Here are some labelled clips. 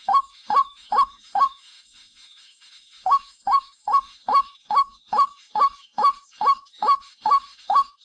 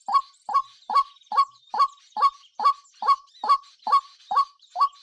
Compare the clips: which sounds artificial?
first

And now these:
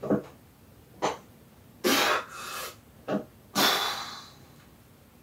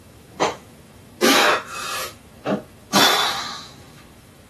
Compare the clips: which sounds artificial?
second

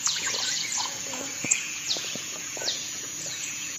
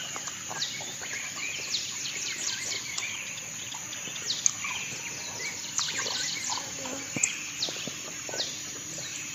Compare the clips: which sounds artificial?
first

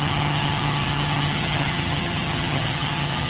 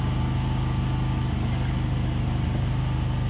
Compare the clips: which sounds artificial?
first